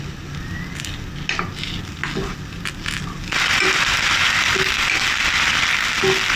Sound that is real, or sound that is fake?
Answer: real